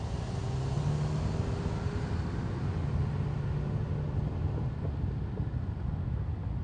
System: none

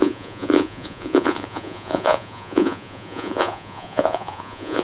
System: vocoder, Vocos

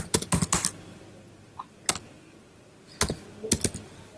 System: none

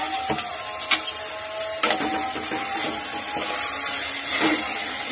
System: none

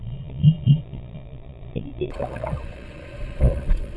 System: vocoder, Vocos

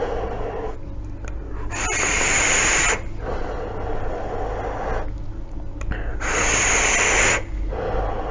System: none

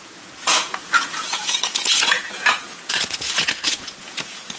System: vocoder, Vocos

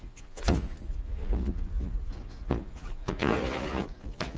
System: vocoder, Vocos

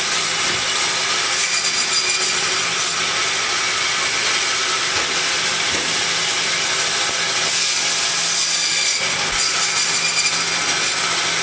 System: none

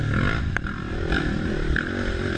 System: none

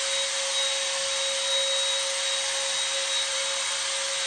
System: none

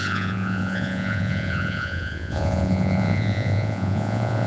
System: vocoder, Vocos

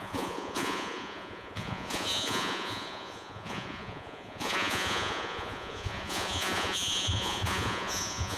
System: vocoder, Vocos